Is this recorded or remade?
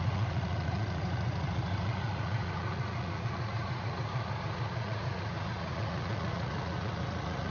remade